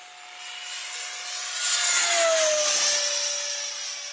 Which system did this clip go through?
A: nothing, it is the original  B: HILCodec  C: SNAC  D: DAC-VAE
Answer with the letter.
A